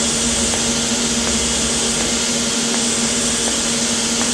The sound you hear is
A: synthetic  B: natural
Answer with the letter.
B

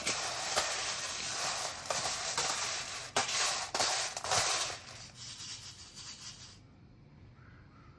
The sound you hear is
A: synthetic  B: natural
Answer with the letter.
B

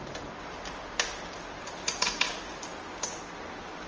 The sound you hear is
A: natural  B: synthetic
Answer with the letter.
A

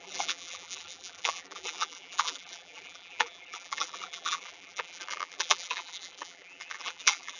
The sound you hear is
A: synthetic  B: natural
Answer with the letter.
A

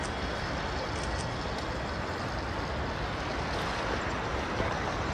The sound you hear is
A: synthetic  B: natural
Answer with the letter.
B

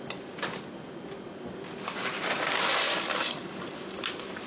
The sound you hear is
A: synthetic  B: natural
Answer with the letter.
A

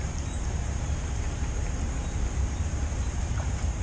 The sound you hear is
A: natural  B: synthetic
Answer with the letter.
B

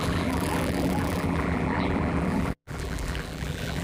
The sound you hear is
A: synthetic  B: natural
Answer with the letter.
A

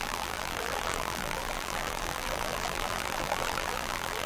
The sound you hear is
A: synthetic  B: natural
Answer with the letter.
A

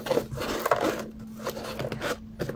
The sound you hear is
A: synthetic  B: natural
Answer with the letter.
B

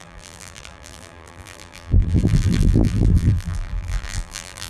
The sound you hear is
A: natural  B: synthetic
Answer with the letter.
B